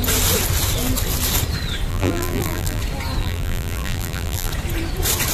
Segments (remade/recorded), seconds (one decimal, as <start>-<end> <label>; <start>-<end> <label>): 0.0-1.9 recorded; 1.9-2.8 remade; 2.8-3.2 recorded; 3.2-4.5 remade; 4.5-5.3 recorded